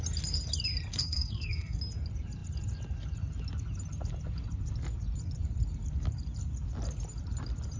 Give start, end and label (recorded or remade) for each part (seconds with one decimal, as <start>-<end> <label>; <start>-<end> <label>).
0.0-0.9 recorded; 0.9-1.8 remade; 1.8-7.8 recorded

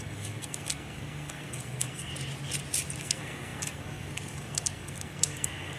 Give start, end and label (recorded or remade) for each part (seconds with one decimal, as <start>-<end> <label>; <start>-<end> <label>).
0.0-2.1 remade; 2.1-3.0 recorded; 3.0-5.8 remade